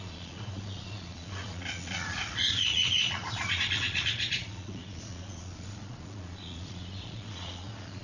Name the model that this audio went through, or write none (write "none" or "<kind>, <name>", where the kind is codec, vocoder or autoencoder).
vocoder, Vocos